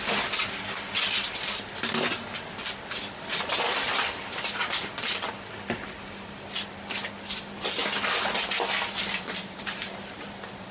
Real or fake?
real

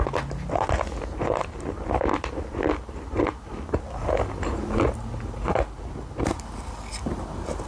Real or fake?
real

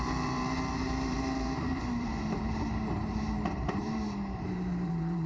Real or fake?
fake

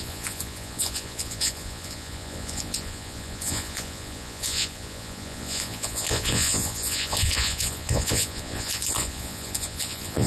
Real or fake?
fake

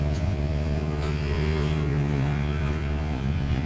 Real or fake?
fake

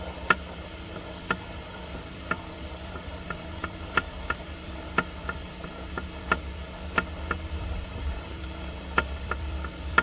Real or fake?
fake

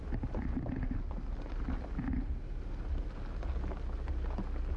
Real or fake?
real